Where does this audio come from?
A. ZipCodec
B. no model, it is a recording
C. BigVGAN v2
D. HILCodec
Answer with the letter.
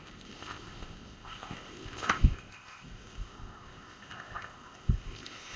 A